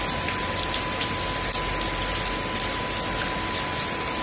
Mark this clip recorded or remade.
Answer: recorded